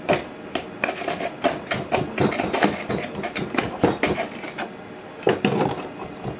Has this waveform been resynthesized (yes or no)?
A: no